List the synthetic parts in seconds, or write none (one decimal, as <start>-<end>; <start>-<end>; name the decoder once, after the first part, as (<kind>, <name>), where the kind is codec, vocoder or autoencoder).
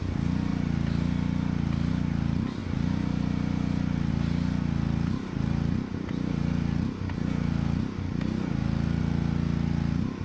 none